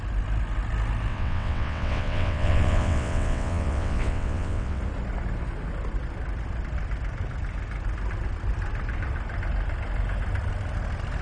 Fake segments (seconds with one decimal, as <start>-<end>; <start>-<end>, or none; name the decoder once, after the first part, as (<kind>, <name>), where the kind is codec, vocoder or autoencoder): 1.1-4.8 (vocoder, WaveNeXt)